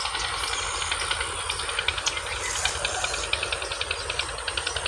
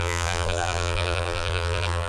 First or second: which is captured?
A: first